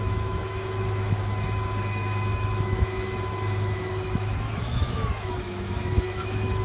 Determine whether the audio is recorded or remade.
remade